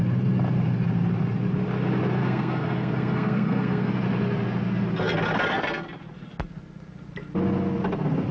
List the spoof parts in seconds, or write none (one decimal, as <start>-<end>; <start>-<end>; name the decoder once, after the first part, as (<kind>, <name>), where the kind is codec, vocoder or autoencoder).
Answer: 2.2-3.9 (codec, SNAC)